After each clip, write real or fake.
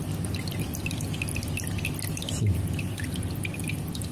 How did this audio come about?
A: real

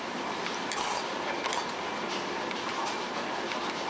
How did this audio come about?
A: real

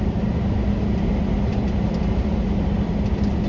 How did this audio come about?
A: real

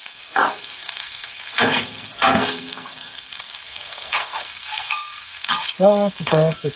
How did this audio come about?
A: fake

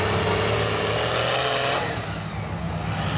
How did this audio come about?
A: real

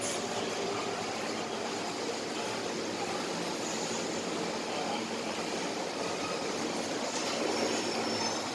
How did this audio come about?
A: real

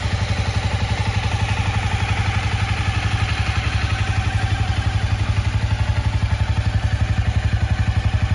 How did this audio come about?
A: real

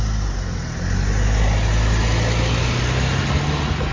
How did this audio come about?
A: real